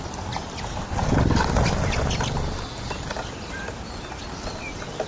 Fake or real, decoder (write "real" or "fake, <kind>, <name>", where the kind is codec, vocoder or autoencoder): real